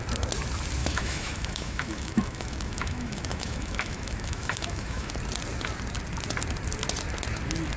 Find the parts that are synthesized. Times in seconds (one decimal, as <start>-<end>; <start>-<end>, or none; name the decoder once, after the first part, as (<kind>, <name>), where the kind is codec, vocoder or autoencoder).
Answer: 0.8-5.1 (autoencoder, DAC-VAE)